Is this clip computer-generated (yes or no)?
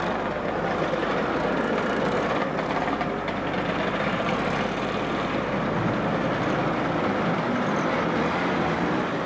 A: no